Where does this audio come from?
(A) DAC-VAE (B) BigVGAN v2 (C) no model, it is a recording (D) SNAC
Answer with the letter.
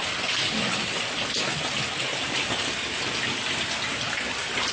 C